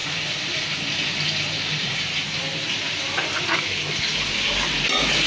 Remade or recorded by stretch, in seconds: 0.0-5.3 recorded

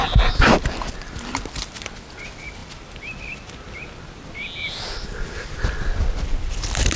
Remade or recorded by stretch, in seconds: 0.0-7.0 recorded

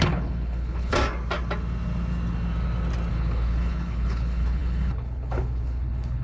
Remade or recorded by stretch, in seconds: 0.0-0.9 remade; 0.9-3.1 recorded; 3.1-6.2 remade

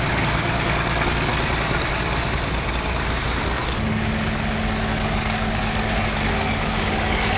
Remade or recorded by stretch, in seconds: 0.0-1.3 remade; 1.3-3.4 recorded; 3.4-7.4 remade

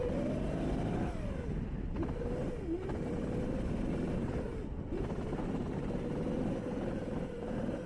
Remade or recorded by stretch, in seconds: 0.0-7.9 recorded

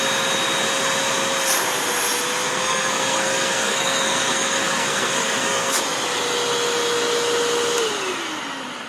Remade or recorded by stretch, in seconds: 0.0-2.5 recorded; 2.5-5.8 remade; 5.8-8.9 recorded

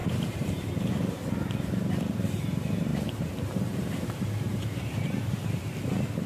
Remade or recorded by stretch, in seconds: 0.0-0.9 remade; 0.9-2.9 recorded; 2.9-3.9 remade; 3.9-4.5 recorded; 4.5-5.2 remade; 5.2-6.3 recorded

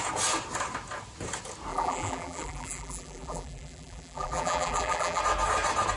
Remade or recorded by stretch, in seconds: 0.0-1.7 recorded; 1.7-5.2 remade; 5.2-6.0 recorded